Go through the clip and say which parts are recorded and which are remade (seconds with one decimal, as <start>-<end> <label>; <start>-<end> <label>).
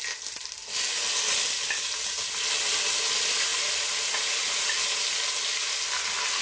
0.0-6.4 recorded